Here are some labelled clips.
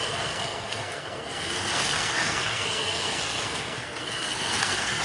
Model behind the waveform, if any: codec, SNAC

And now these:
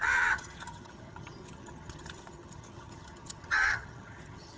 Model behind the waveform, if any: vocoder, HiFi-GAN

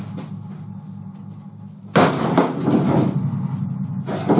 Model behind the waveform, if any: none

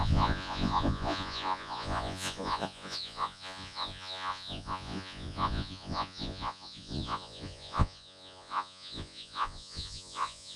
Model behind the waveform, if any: vocoder, Vocos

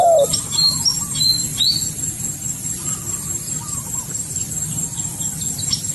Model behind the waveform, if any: none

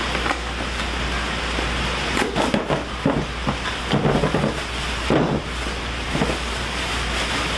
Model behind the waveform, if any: none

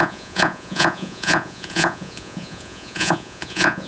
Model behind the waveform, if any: vocoder, Vocos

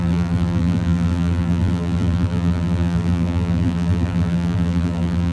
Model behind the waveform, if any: vocoder, BigVGAN v2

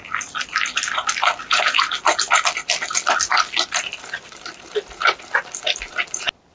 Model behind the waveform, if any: none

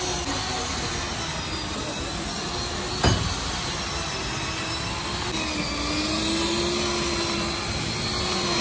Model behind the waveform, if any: none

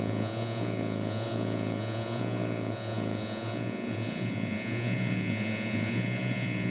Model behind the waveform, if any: vocoder, Vocos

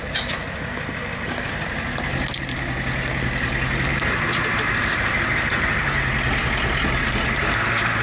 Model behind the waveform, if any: none